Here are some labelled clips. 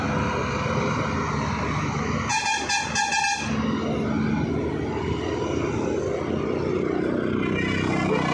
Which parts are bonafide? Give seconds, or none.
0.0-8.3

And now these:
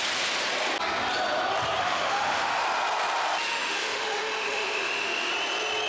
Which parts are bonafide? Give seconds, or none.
0.0-1.8; 2.6-3.5; 5.3-5.9

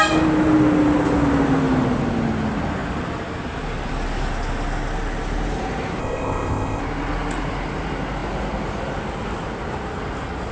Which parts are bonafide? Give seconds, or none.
0.0-6.0; 6.8-10.5

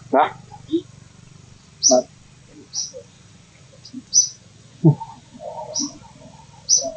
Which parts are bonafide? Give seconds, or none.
0.0-2.5; 5.6-7.0

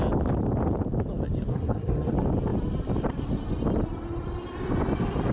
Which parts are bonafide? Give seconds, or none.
0.0-1.5; 2.1-5.3